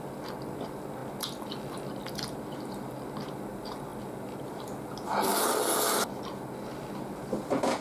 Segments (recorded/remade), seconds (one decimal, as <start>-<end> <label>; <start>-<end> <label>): 0.0-7.8 recorded